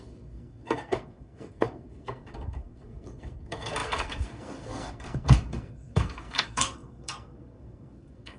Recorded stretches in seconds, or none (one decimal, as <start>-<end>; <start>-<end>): none